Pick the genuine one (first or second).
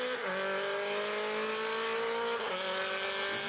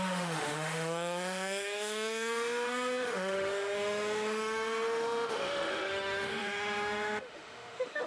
first